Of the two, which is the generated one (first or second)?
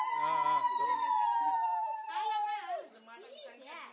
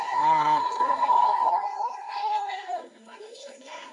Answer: second